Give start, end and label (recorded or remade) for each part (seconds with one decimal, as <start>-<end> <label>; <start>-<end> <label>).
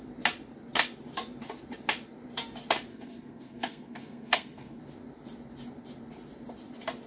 0.0-2.9 recorded; 2.9-4.8 remade; 4.8-7.1 recorded